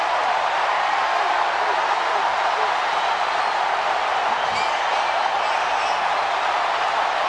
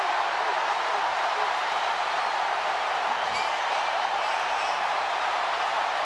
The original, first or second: first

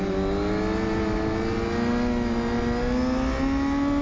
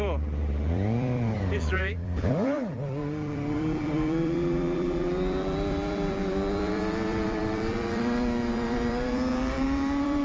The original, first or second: first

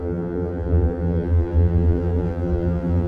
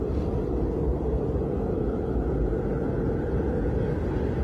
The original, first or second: second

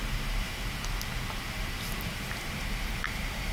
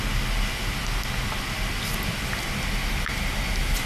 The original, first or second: second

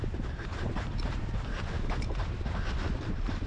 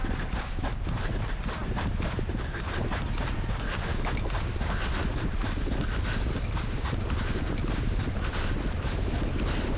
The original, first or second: second